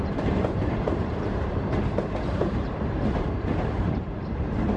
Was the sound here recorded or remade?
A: remade